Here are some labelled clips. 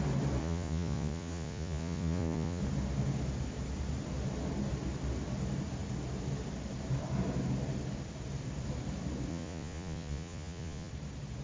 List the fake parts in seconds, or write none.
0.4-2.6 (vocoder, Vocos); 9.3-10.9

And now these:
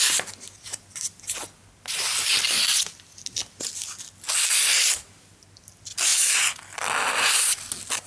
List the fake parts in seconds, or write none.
none

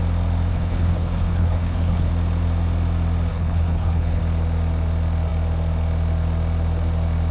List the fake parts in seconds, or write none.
0.5-2.1 (codec, HILCodec); 3.3-4.2